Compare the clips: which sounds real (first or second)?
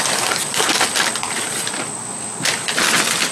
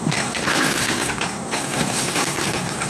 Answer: first